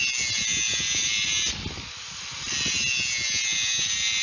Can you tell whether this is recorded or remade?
recorded